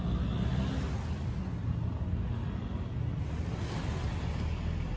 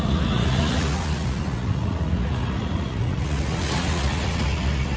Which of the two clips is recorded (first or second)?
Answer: first